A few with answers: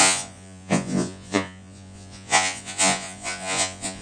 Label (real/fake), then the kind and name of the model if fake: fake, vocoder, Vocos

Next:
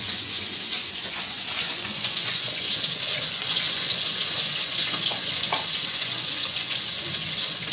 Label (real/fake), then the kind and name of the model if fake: fake, vocoder, Vocos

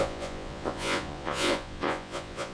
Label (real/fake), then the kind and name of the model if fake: fake, vocoder, Vocos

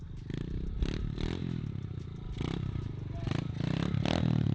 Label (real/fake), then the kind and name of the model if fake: real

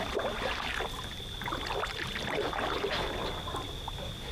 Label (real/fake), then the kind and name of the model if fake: real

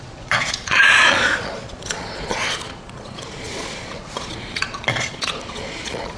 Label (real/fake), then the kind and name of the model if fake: fake, vocoder, Vocos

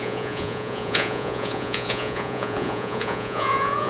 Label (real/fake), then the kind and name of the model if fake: fake, vocoder, Vocos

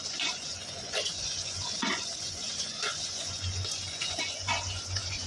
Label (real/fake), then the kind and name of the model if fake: fake, vocoder, Vocos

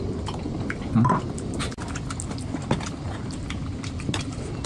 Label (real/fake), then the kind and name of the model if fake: real